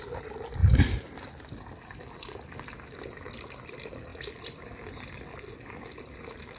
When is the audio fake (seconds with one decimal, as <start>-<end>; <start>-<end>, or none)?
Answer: none